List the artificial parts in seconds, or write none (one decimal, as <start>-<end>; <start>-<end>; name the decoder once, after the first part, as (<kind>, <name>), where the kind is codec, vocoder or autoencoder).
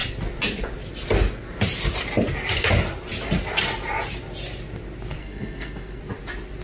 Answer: 5.2-6.0 (codec, SNAC)